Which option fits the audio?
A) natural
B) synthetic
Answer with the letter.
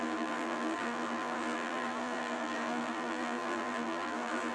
B